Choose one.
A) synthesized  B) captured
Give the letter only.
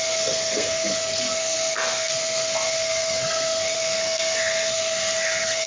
A